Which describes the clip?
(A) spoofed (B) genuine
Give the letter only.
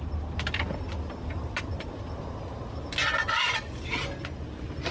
B